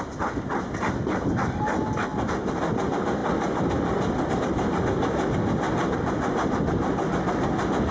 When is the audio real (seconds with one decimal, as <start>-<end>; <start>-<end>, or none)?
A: 0.0-7.9